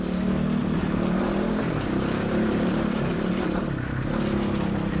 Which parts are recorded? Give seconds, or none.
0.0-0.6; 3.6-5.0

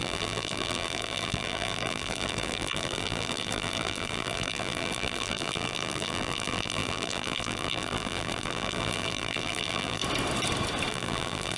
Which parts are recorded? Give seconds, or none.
10.0-10.9

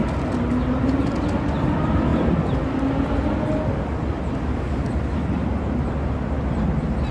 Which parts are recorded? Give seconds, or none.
0.0-7.1